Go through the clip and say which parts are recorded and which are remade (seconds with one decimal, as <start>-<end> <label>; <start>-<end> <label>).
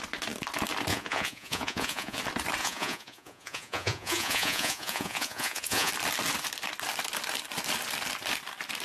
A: 0.0-0.9 recorded; 0.9-2.2 remade; 2.2-2.6 recorded; 2.6-5.9 remade; 5.9-8.8 recorded